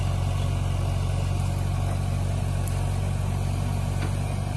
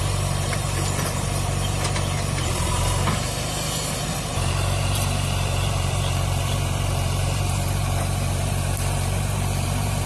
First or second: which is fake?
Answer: second